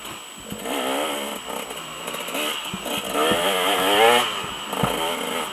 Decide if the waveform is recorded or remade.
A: recorded